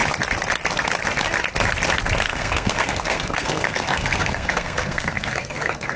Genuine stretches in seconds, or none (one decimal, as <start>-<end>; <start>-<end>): 0.0-2.3